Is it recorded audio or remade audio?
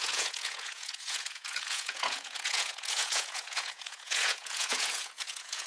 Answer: remade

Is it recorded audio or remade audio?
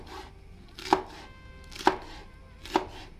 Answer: recorded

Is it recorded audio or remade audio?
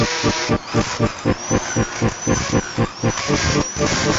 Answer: recorded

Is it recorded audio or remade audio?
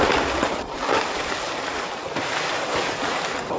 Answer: recorded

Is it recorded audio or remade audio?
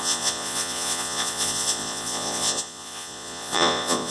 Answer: remade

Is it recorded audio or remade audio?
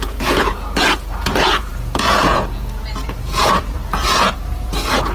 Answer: remade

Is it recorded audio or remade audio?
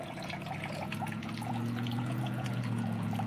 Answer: remade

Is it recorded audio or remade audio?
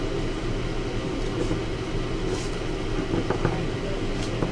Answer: recorded